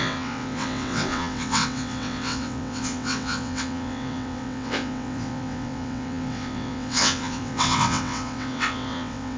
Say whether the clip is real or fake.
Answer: fake